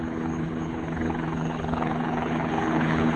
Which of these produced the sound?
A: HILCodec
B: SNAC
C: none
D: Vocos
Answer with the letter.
A